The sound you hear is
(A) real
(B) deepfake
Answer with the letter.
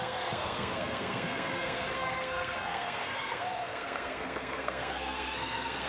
B